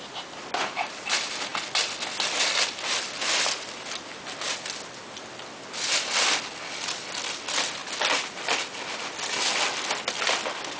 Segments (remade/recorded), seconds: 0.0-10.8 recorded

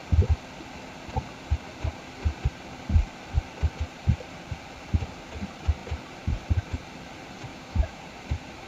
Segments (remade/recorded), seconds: 0.0-7.5 recorded; 7.5-8.0 remade; 8.0-8.7 recorded

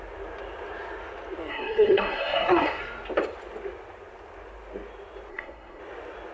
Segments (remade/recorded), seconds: 0.0-1.5 recorded; 1.5-2.8 remade; 2.8-5.3 recorded; 5.3-5.8 remade; 5.8-6.3 recorded

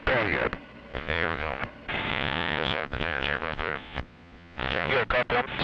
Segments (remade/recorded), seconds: 0.0-0.9 recorded; 0.9-1.6 remade; 1.6-2.1 recorded; 2.1-4.9 remade; 4.9-5.6 recorded

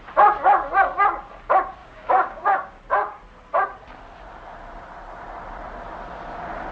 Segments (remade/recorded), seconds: 0.0-1.8 recorded; 1.8-2.8 remade; 2.8-6.7 recorded

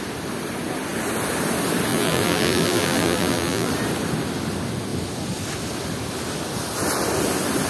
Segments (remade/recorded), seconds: 0.0-1.9 recorded; 1.9-3.7 remade; 3.7-7.7 recorded